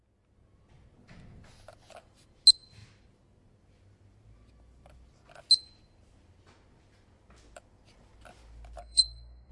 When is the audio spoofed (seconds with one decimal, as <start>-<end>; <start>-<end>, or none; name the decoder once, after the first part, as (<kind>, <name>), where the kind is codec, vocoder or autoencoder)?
8.8-9.5 (codec, SNAC)